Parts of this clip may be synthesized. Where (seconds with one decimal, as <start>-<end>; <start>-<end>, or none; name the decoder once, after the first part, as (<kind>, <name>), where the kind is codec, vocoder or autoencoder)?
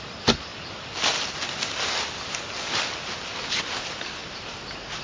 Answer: 0.0-5.0 (vocoder, BigVGAN v2)